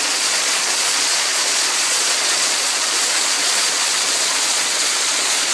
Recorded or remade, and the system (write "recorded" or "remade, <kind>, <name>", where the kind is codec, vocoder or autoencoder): remade, vocoder, Vocos